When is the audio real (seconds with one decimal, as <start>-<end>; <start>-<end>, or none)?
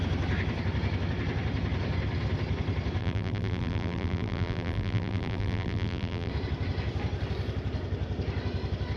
0.0-3.0; 6.3-9.0